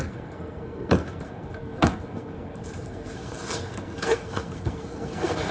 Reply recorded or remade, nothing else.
remade